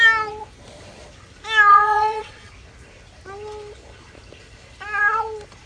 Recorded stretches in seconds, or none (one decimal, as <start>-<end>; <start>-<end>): 0.0-1.7; 2.5-5.7